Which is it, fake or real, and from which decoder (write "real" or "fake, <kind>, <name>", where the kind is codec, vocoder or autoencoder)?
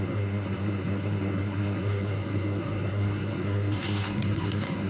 fake, codec, SNAC